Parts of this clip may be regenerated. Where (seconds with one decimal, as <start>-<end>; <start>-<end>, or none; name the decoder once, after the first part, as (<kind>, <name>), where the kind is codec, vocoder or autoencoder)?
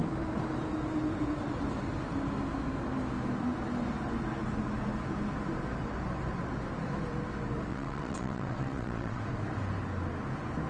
7.7-9.2 (vocoder, WaveNeXt)